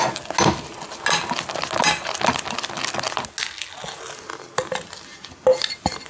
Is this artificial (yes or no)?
no